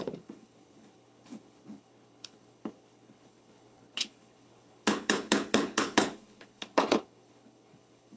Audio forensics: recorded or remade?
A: remade